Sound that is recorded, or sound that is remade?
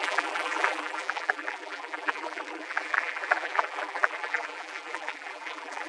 remade